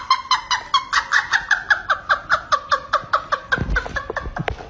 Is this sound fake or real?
real